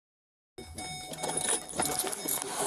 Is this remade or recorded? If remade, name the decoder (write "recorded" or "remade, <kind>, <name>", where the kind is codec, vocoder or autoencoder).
recorded